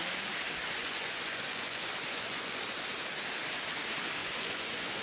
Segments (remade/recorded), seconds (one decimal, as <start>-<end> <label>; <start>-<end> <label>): 0.0-0.8 recorded; 0.8-2.6 remade; 2.6-4.2 recorded; 4.2-5.0 remade